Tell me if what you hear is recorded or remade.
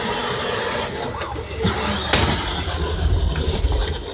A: recorded